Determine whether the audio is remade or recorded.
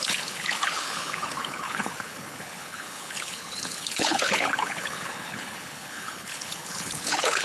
remade